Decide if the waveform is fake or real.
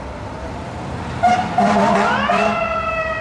fake